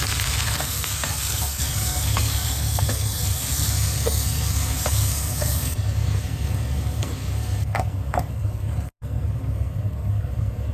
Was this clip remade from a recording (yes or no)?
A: yes